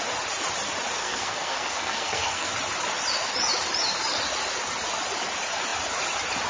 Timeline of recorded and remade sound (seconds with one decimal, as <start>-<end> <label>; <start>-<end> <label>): 0.0-1.0 recorded; 1.0-2.5 remade; 2.5-6.5 recorded